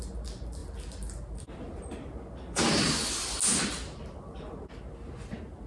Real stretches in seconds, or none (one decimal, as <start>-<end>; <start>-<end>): 0.0-5.7